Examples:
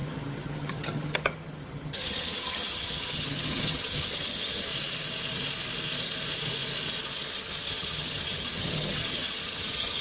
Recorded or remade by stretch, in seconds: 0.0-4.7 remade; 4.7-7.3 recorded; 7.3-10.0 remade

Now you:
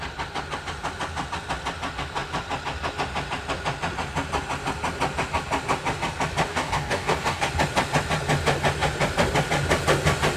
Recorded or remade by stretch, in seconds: 0.0-6.5 recorded; 6.5-7.5 remade; 7.5-10.4 recorded

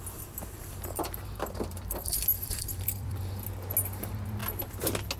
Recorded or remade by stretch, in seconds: 0.0-0.4 recorded; 0.4-3.4 remade; 3.4-5.2 recorded

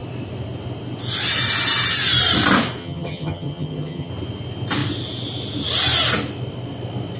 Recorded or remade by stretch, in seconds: 0.0-2.8 recorded; 2.8-4.1 remade; 4.1-7.2 recorded

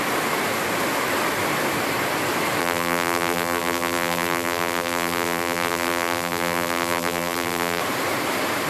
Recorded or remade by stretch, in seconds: 0.0-2.6 recorded; 2.6-7.8 remade; 7.8-8.7 recorded

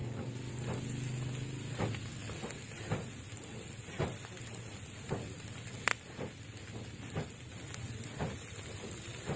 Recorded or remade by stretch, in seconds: 0.0-9.4 recorded

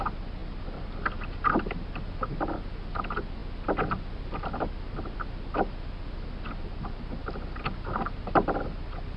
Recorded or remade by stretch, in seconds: 0.0-9.2 recorded